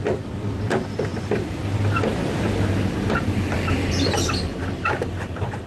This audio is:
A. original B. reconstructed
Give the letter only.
B